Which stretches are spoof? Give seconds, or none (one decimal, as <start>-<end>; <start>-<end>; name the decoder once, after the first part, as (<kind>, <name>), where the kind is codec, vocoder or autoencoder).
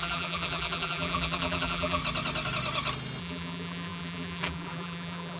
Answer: 0.0-2.0 (vocoder, BigVGAN v2); 3.2-5.4